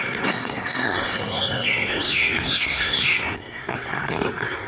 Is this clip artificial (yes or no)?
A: yes